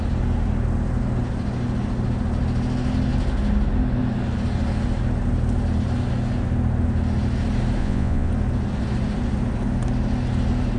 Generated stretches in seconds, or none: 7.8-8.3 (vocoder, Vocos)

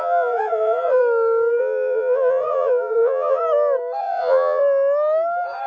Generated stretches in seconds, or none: 0.0-1.0 (vocoder, Vocos); 1.6-3.4; 4.0-4.6

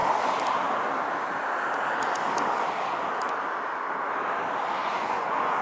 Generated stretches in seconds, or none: 4.8-5.6 (vocoder, Vocos)

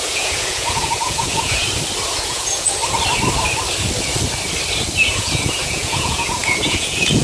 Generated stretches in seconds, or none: 0.0-1.6 (vocoder, Vocos); 2.2-2.8; 5.1-7.2